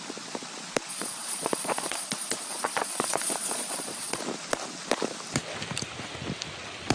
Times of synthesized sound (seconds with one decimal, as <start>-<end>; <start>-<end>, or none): 0.9-4.2

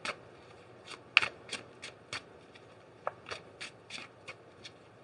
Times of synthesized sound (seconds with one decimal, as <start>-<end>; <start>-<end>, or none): none

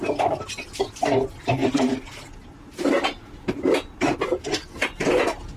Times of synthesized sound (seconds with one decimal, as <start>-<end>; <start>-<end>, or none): none

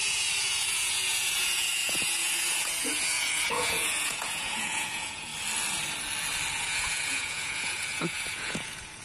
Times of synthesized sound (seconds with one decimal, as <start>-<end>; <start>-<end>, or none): 0.0-5.3; 6.5-9.0